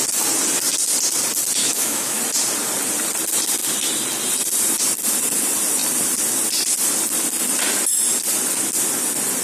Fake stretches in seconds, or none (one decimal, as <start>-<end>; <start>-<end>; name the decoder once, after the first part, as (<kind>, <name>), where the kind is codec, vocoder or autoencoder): 1.6-2.2 (autoencoder, DAC-VAE)